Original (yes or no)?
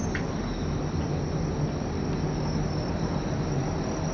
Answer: yes